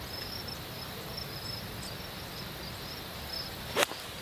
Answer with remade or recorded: recorded